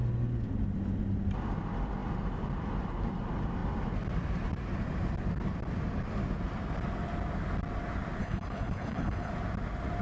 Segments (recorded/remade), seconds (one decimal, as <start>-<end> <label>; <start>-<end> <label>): 0.0-8.2 recorded; 8.2-9.3 remade; 9.3-10.0 recorded